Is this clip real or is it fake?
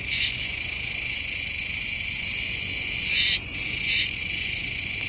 fake